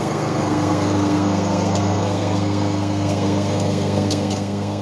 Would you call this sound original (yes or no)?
no